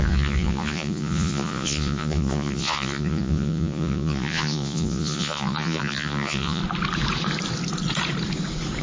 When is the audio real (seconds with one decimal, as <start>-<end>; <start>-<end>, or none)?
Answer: 6.6-8.8